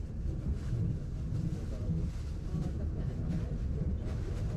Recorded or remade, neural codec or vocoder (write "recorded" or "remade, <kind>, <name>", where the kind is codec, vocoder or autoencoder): recorded